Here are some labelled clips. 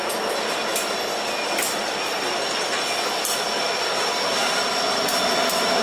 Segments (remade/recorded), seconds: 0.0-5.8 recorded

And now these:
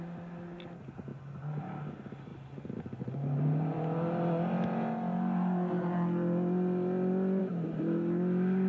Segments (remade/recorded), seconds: 0.0-8.7 recorded

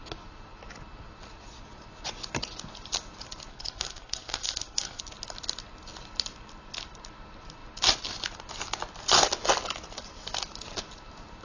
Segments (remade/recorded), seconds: 0.0-3.5 recorded; 3.5-5.0 remade; 5.0-11.4 recorded

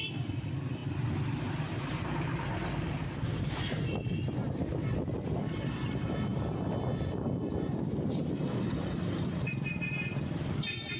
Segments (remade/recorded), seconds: 0.0-0.8 remade; 0.8-1.4 recorded; 1.4-4.1 remade; 4.1-5.3 recorded; 5.3-11.0 remade

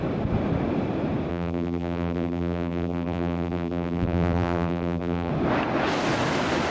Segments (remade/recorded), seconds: 0.0-1.3 recorded; 1.3-5.3 remade; 5.3-6.7 recorded

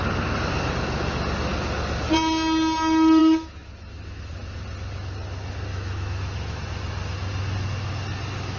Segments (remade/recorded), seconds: 0.0-3.2 recorded; 3.2-4.3 remade; 4.3-5.7 recorded; 5.7-6.6 remade; 6.6-8.6 recorded

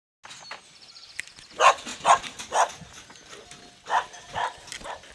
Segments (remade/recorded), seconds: 0.0-5.1 recorded